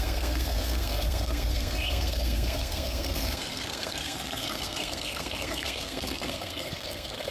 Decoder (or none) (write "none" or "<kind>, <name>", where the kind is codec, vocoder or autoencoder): codec, SNAC